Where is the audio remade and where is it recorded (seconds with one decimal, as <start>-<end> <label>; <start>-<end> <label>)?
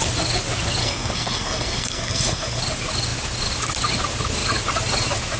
0.0-0.8 recorded; 0.8-2.6 remade; 2.6-5.4 recorded